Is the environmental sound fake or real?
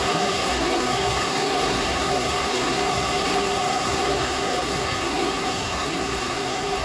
fake